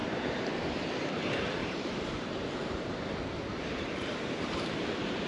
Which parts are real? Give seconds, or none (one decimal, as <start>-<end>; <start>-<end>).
0.5-1.6; 4.8-5.3